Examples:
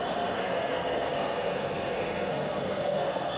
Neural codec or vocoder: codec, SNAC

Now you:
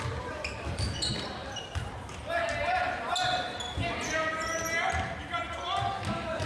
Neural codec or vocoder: none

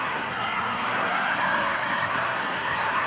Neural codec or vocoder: codec, SNAC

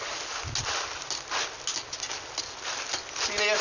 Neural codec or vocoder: none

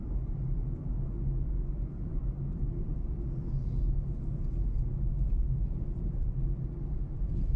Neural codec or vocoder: none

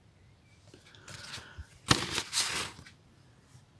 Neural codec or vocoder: none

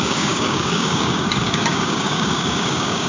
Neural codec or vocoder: codec, DAC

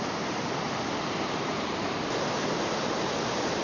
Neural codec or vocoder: none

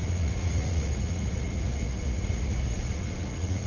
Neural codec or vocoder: vocoder, Vocos